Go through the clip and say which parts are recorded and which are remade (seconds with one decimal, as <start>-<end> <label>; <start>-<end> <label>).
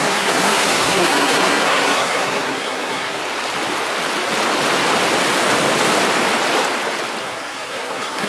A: 0.0-3.2 remade; 3.2-7.2 recorded; 7.2-8.3 remade